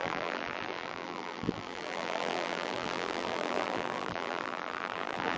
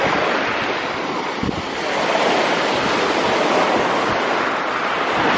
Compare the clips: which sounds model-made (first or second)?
first